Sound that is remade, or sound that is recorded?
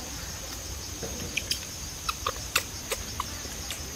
remade